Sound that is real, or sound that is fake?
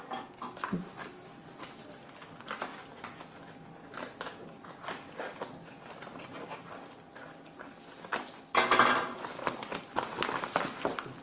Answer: real